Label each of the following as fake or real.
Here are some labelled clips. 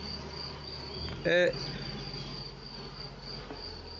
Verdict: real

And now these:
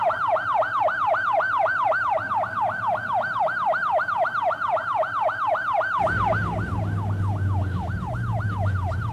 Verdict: real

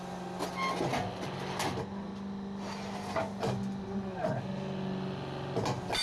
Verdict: real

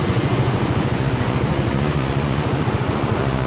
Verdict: fake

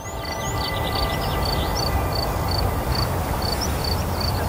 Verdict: real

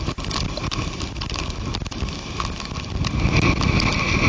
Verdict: real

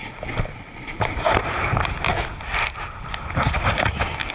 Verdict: real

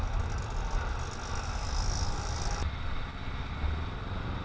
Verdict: real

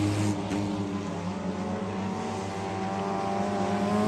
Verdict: real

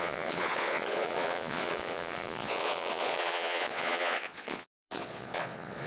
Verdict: fake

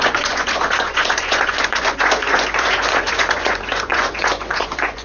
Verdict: fake